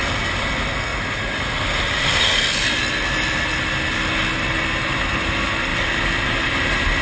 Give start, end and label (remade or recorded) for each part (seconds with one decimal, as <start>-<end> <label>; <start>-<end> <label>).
0.0-0.9 recorded; 0.9-2.3 remade; 2.3-5.7 recorded; 5.7-7.0 remade